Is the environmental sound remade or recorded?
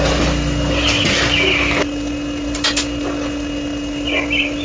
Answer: recorded